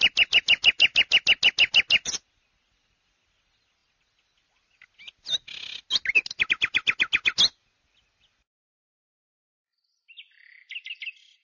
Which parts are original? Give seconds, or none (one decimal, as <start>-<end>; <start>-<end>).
0.0-11.4